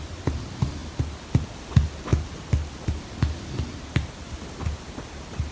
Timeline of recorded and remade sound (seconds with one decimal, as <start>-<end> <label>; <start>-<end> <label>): 0.0-5.5 recorded